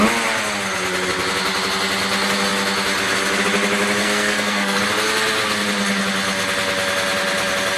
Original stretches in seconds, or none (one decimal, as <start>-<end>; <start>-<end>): 0.0-4.0; 4.8-7.8